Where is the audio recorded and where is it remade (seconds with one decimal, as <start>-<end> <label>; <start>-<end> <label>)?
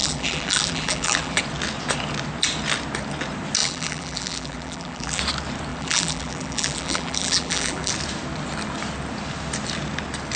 0.0-1.4 remade; 1.4-3.6 recorded; 3.6-5.2 remade; 5.2-5.7 recorded; 5.7-7.9 remade; 7.9-10.4 recorded